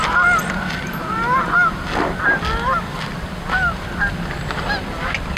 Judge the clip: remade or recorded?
recorded